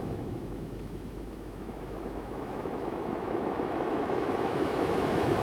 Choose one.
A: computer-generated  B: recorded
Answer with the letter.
A